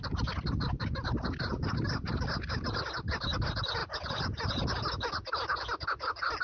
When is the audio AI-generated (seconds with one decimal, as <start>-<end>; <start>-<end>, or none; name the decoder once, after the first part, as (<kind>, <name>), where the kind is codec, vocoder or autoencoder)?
none